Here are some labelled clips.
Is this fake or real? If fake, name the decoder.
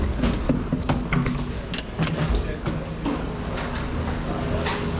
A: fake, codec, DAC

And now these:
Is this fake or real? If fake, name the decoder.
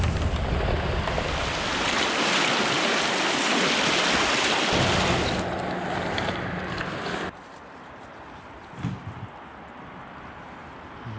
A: real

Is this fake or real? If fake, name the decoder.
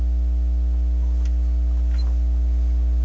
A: real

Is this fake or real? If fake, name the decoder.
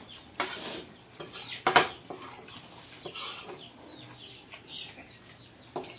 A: real